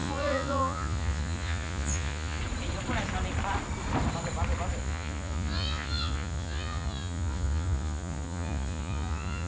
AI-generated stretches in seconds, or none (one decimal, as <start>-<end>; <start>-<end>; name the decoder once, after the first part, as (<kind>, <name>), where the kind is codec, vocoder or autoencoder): 0.0-2.4 (vocoder, Vocos); 4.8-9.5